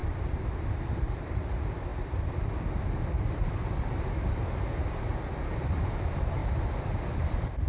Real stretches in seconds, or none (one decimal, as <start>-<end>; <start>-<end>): 0.0-1.2; 1.9-3.9; 5.1-5.6; 6.4-7.2